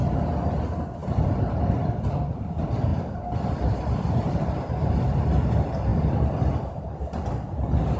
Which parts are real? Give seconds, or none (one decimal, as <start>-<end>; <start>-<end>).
0.0-1.0; 2.5-5.9; 7.2-8.0